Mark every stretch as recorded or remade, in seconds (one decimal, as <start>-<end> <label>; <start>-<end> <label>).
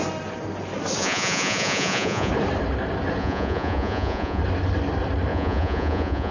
0.0-1.0 recorded; 1.0-2.3 remade; 2.3-3.2 recorded; 3.2-4.4 remade; 4.4-5.3 recorded; 5.3-6.3 remade